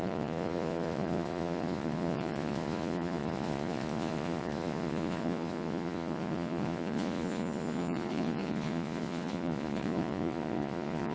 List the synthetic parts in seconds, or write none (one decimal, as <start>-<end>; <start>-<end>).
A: 0.0-11.1